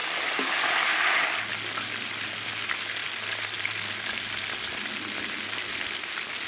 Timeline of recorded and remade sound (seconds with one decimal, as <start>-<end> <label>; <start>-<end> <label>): 0.0-6.5 recorded